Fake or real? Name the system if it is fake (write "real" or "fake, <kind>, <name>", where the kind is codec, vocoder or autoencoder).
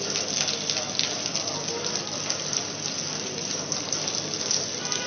real